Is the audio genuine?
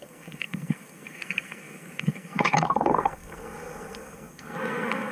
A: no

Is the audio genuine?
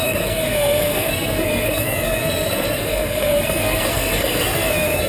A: no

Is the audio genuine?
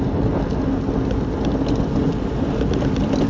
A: yes